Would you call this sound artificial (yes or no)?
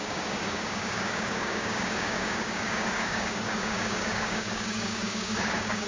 yes